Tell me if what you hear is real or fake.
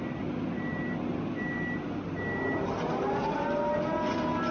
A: real